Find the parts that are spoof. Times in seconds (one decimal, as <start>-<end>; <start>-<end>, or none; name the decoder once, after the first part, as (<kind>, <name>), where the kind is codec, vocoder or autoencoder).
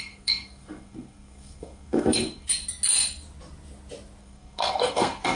0.0-2.5 (codec, SNAC); 4.2-5.4